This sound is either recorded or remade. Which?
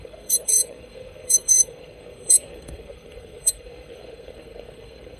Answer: remade